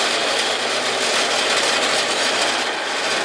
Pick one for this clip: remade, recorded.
recorded